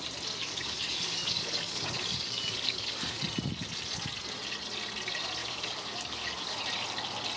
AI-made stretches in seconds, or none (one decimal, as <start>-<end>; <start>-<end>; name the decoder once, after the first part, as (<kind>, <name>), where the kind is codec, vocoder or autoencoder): 0.4-3.2 (codec, DAC); 5.4-6.6